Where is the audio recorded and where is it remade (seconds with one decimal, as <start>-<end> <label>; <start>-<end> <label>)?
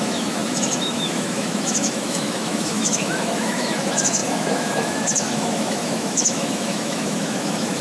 0.0-7.8 remade